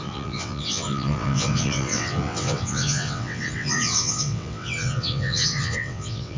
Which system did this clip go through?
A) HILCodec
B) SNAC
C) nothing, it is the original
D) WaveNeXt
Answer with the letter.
D